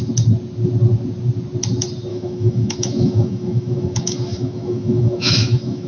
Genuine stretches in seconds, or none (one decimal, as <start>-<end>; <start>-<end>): 0.0-2.1